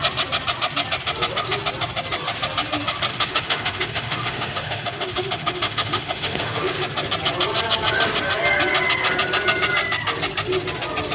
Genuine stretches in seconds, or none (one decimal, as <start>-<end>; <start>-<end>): 0.0-3.1; 6.6-11.1

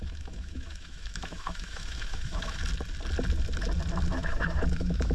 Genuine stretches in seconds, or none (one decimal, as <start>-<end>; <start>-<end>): 2.6-4.1